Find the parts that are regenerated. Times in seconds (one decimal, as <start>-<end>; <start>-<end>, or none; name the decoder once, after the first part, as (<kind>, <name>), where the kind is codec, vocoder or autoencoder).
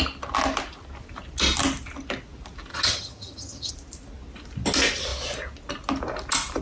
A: 2.7-3.7 (vocoder, HiFi-GAN)